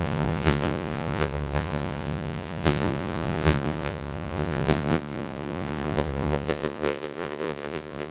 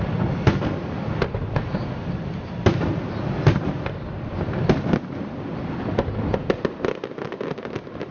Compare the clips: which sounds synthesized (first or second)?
first